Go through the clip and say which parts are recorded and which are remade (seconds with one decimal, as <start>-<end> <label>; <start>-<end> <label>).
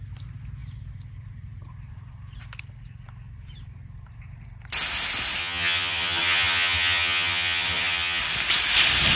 0.0-5.4 recorded; 5.4-8.2 remade; 8.2-9.2 recorded